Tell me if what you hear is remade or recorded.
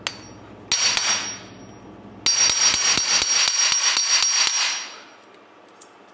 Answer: recorded